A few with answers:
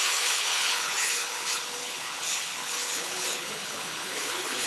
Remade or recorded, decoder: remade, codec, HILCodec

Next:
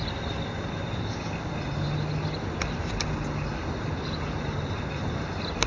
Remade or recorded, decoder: remade, vocoder, BigVGAN v2